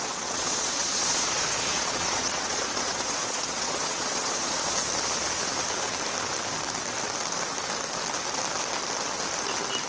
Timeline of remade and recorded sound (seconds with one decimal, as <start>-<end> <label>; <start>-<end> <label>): 0.0-4.8 remade; 4.8-9.9 recorded